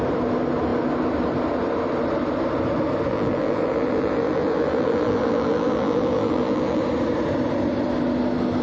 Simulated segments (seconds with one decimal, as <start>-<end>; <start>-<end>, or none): 3.1-6.8